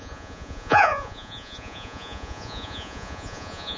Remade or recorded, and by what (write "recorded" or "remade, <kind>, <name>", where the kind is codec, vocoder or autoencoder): remade, vocoder, Vocos